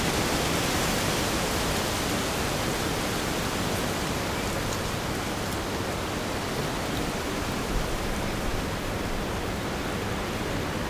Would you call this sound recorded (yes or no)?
yes